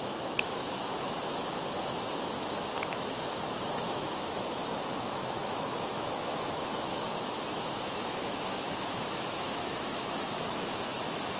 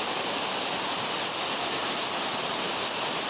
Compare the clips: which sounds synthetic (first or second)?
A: first